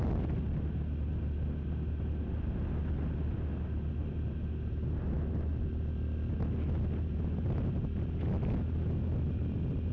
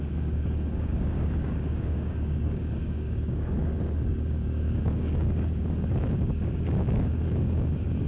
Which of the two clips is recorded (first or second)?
first